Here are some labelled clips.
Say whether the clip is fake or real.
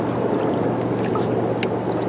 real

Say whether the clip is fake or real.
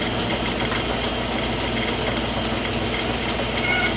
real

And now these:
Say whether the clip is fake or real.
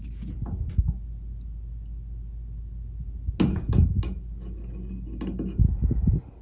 real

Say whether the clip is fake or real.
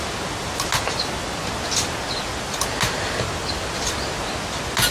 real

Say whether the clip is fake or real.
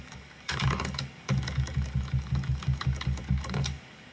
fake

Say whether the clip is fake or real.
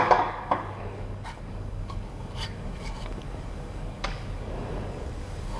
fake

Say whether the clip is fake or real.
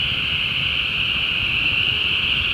real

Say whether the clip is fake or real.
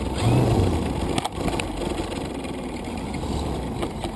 real